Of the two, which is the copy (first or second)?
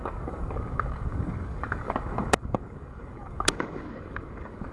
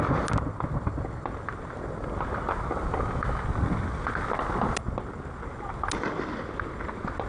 first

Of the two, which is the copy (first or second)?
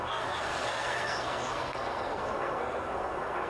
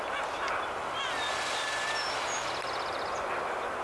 first